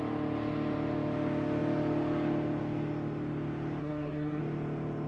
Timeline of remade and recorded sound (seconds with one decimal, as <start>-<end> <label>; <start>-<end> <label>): 0.0-3.8 recorded; 3.8-4.4 remade; 4.4-5.1 recorded